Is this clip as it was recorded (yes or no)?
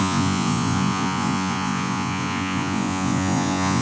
no